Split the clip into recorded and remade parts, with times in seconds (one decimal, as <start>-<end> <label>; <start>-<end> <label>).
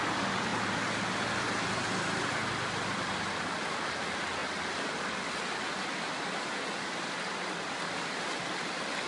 0.0-9.1 recorded